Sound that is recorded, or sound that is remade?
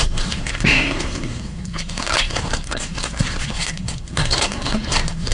remade